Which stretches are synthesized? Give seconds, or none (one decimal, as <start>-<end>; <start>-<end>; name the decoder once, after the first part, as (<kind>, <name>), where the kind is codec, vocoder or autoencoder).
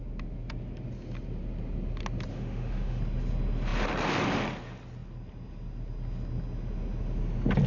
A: 2.3-3.0 (autoencoder, DAC-VAE)